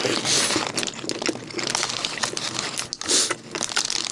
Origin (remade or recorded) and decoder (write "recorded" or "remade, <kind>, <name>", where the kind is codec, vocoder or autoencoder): recorded